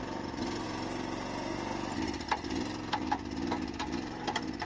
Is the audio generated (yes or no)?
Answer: no